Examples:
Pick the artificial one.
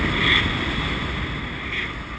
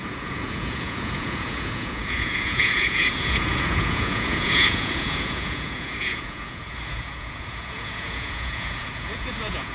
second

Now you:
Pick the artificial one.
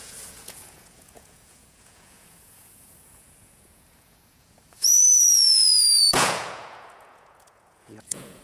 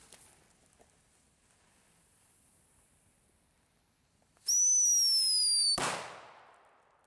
first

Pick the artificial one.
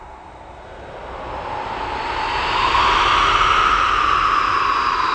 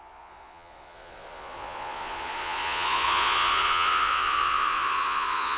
second